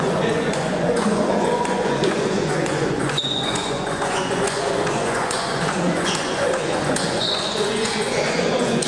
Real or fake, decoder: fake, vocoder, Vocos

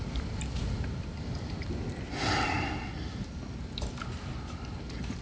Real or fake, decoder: real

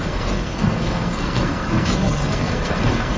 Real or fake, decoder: fake, codec, SNAC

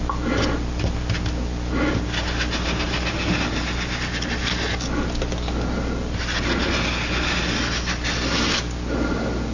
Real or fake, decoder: real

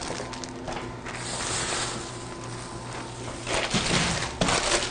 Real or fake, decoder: real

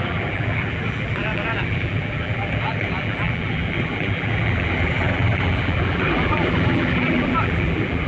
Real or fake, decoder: fake, vocoder, BigVGAN v2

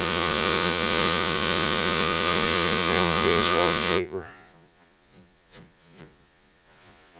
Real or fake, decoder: fake, vocoder, Vocos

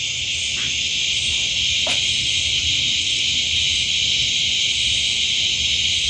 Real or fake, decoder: real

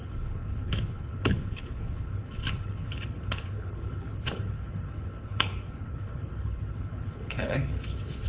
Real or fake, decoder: fake, codec, HILCodec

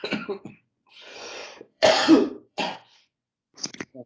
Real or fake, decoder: fake, vocoder, Vocos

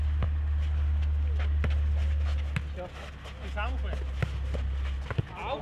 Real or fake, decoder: real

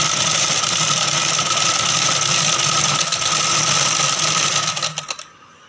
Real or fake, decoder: real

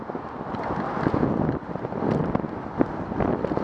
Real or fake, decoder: real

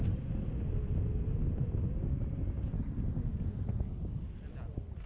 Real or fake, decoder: real